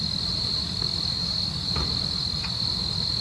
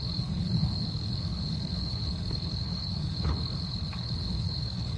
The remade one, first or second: second